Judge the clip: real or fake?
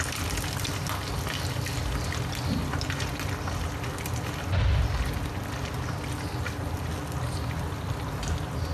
real